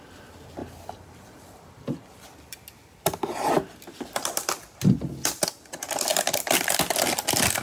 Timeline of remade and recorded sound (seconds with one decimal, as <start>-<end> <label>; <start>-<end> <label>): 0.0-0.6 recorded; 0.6-2.0 remade; 2.0-6.1 recorded; 6.1-6.7 remade; 6.7-7.6 recorded